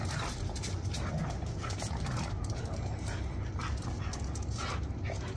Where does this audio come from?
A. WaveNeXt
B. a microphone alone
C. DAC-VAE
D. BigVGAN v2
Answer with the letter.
B